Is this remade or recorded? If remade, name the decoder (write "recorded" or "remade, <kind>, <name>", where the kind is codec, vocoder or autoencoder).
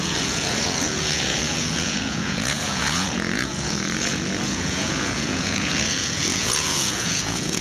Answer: remade, vocoder, Vocos